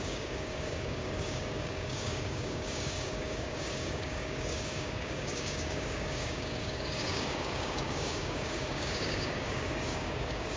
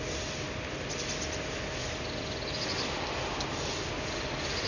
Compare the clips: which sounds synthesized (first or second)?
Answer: first